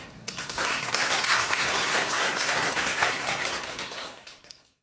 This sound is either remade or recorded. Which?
remade